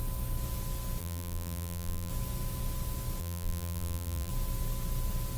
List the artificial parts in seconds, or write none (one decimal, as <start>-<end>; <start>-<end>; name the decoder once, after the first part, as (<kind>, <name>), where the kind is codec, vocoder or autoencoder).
1.0-2.1 (vocoder, BigVGAN v2); 3.2-4.3